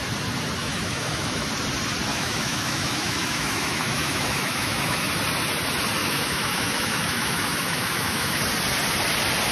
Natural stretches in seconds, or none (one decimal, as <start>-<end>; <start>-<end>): 0.0-0.6; 1.5-2.1; 5.1-6.0; 8.4-9.5